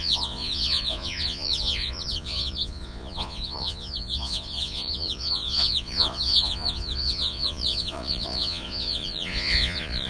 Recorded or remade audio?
remade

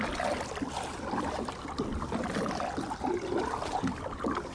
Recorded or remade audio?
recorded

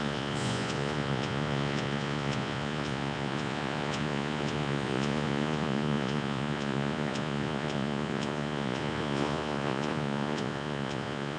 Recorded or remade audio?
remade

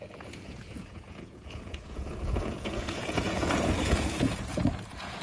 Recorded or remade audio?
remade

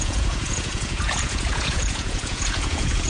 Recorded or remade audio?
remade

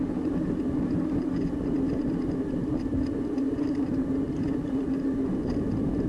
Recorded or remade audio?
recorded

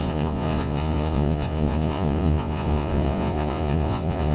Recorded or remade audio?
remade